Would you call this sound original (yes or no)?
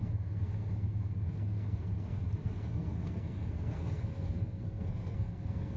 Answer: no